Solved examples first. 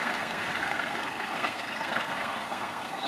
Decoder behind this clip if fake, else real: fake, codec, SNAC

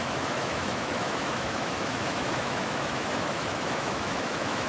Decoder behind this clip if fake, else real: fake, autoencoder, DAC-VAE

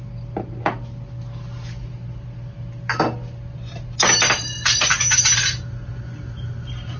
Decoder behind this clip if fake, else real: real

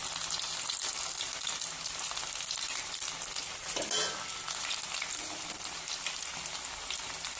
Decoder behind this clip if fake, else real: real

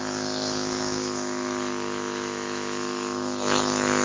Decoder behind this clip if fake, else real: fake, autoencoder, DAC-VAE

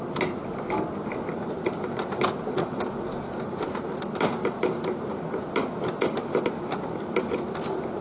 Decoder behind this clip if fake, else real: real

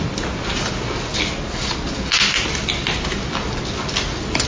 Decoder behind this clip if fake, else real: real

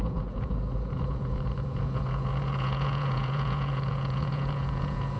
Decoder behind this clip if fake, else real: fake, vocoder, Vocos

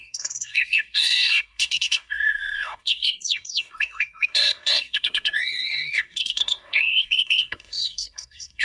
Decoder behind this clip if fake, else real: fake, codec, SNAC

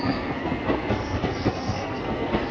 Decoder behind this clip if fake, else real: fake, codec, SNAC